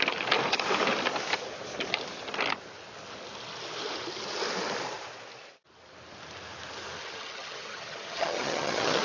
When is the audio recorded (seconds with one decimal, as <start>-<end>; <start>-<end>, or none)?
0.0-7.0